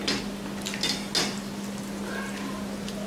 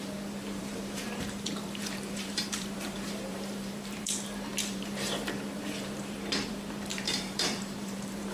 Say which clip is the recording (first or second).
first